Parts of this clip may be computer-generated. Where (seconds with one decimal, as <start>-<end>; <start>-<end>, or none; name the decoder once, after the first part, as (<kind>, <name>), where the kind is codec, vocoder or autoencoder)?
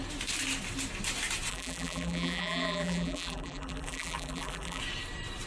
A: 1.5-4.8 (vocoder, BigVGAN v2)